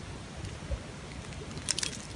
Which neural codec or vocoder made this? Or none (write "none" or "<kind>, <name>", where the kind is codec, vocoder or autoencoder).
none